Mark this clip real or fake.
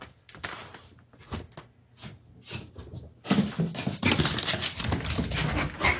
real